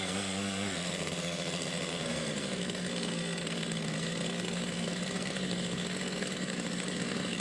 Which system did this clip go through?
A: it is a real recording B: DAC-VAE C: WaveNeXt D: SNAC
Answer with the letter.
D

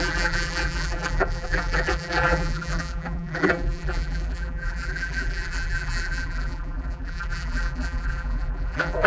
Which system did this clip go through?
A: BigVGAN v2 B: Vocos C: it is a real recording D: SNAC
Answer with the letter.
A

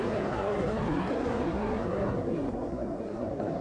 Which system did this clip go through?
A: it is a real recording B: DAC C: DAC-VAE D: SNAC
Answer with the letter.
D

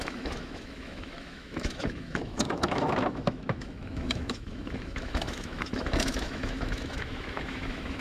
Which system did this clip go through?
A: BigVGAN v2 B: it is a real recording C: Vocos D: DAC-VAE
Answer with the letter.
D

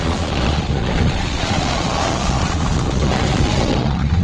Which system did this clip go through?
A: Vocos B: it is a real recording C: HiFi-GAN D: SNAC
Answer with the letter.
A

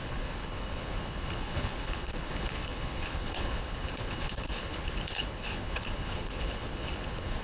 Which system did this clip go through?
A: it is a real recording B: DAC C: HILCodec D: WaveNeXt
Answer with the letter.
C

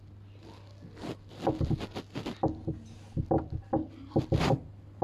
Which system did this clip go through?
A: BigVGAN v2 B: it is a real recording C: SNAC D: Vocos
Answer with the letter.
B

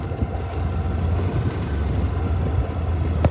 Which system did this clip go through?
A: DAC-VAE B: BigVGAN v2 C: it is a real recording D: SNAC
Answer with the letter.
C